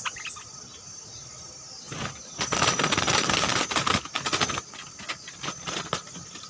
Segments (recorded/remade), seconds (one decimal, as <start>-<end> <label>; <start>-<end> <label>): 0.0-6.5 recorded